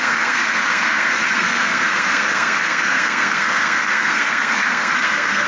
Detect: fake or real fake